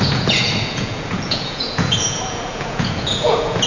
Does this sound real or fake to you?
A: fake